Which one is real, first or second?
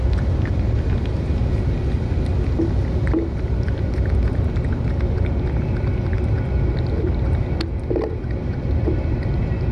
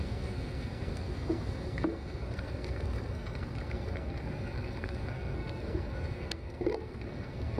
first